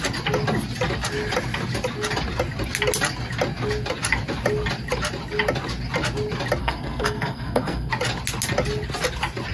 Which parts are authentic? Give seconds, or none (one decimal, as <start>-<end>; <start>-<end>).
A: 0.0-6.6; 7.9-9.5